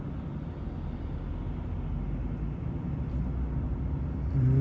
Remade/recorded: recorded